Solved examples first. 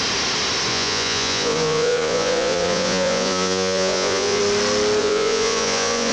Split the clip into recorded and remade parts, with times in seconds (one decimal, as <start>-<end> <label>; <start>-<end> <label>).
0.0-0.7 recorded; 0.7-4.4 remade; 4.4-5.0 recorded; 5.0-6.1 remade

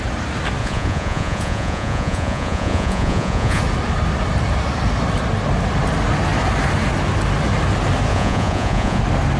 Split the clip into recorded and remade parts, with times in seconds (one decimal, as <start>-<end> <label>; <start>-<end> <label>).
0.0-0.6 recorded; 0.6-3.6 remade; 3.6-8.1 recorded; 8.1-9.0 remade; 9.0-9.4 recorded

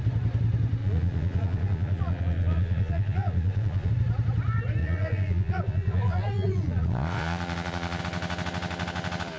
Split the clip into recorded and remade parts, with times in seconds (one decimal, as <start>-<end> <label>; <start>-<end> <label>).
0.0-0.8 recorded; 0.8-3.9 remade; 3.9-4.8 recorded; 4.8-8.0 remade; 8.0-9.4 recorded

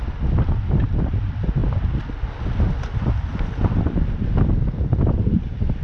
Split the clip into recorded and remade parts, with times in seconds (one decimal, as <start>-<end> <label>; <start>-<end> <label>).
0.0-5.8 recorded

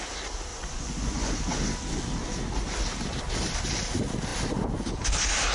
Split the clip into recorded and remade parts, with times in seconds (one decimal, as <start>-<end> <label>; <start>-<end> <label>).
0.0-0.5 recorded; 0.5-1.3 remade; 1.3-5.5 recorded